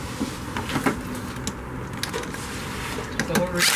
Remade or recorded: recorded